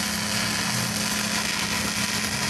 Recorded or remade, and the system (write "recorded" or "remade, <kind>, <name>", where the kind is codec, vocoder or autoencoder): recorded